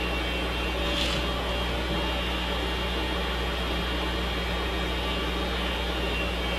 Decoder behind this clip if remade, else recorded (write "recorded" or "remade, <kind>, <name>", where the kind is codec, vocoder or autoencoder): recorded